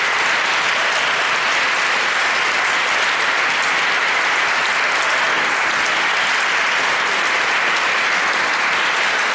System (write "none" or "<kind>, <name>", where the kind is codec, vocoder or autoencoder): none